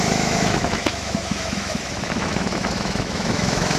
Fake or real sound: fake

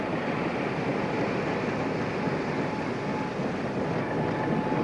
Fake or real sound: real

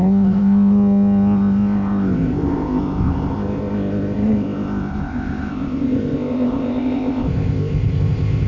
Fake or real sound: fake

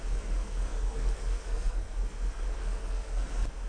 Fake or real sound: fake